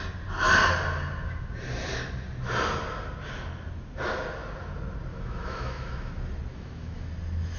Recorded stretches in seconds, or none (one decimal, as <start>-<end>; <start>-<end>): 0.0-5.1; 6.1-6.5; 7.1-7.6